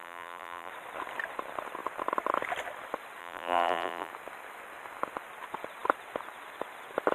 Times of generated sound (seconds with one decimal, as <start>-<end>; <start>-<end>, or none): 0.0-0.7; 3.2-4.1

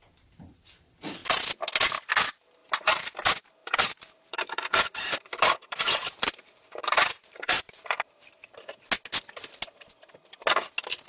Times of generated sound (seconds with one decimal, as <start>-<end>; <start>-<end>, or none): 2.6-3.1; 3.6-8.7

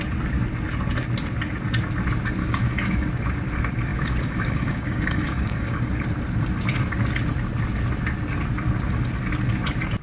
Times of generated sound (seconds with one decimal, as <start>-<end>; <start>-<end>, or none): 2.4-3.1; 3.9-5.9

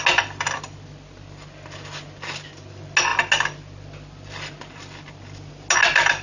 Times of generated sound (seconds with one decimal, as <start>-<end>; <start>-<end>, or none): none

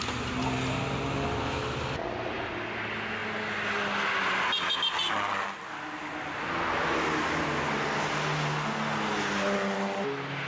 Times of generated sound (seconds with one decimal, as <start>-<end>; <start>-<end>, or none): none

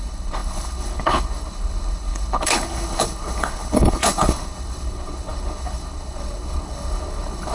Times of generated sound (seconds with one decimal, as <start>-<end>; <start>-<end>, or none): 0.0-7.5

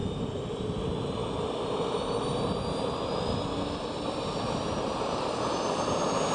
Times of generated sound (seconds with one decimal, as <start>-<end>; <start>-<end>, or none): none

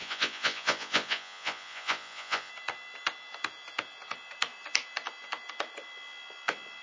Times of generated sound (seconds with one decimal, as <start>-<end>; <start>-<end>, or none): 0.0-2.5